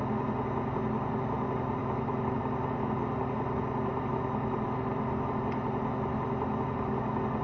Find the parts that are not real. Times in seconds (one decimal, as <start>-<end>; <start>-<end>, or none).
1.8-2.4